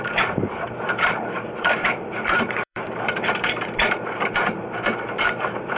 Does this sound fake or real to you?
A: fake